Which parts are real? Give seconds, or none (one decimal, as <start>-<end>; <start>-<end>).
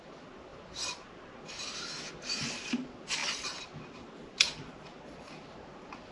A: 0.0-6.1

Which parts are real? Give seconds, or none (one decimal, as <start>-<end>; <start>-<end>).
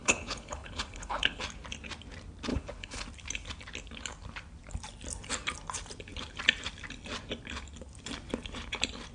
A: 1.4-2.5; 3.0-9.1